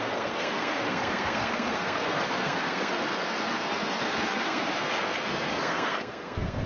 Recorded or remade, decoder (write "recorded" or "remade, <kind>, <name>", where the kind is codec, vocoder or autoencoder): remade, codec, SNAC